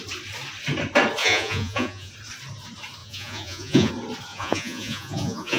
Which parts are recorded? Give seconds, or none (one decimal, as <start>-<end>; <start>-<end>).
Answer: 0.0-1.2; 2.1-3.0; 3.9-4.3